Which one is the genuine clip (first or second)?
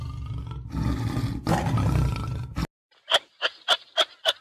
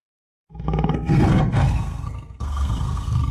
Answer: first